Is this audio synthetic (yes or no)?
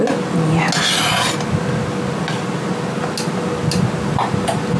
no